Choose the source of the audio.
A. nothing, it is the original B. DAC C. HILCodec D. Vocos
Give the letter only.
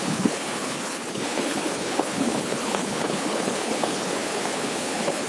C